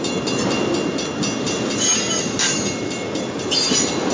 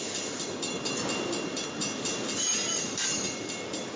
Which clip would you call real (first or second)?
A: first